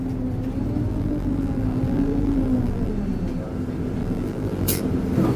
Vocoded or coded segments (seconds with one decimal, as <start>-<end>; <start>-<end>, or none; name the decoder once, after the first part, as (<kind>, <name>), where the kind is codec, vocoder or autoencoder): 0.9-2.9 (vocoder, BigVGAN v2); 4.0-4.8